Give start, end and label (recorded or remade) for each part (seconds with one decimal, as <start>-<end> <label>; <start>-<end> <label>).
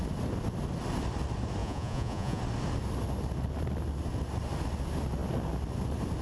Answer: 0.0-1.6 recorded; 1.6-2.4 remade; 2.4-6.2 recorded